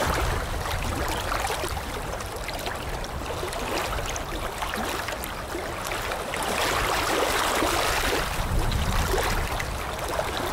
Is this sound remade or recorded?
recorded